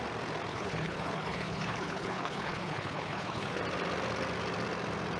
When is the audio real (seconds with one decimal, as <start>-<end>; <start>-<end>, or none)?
0.0-0.5; 3.6-5.2

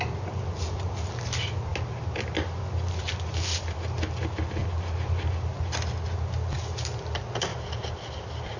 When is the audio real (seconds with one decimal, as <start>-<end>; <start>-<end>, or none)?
0.0-8.6

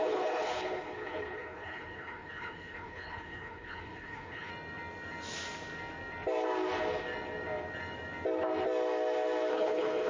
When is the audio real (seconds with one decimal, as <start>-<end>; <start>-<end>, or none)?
4.5-9.5

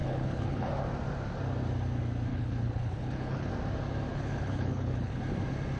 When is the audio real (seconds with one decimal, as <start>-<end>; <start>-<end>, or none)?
0.7-2.3; 3.5-4.1; 5.2-5.8

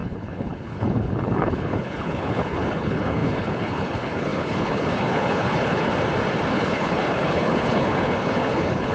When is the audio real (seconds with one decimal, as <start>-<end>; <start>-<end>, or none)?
5.9-6.5

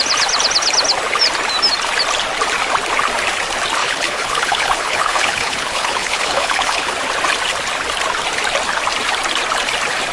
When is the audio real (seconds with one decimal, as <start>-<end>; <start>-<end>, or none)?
0.0-3.8; 6.9-10.1

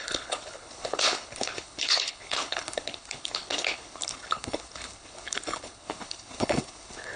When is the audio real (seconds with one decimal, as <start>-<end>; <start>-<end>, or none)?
none